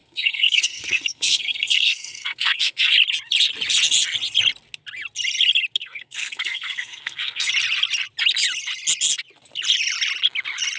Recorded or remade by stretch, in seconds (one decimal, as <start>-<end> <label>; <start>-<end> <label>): 0.0-2.9 remade; 2.9-5.8 recorded; 5.8-7.5 remade; 7.5-10.8 recorded